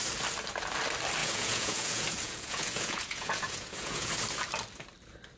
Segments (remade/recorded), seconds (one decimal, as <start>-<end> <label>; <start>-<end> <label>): 0.0-1.2 recorded; 1.2-4.1 remade; 4.1-5.4 recorded